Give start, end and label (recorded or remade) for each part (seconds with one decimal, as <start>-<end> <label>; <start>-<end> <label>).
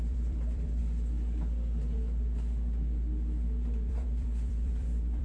0.0-0.8 remade; 0.8-3.9 recorded; 3.9-5.2 remade